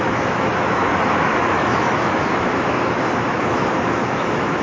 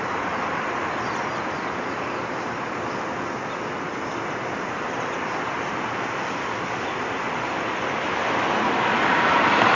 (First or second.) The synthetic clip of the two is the first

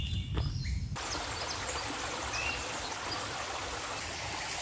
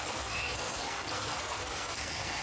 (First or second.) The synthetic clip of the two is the second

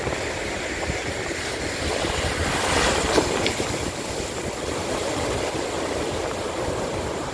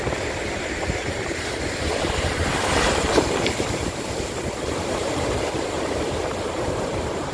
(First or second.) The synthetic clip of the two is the second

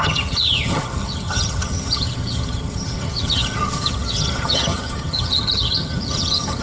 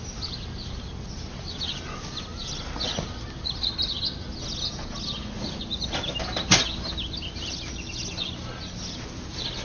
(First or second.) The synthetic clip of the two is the first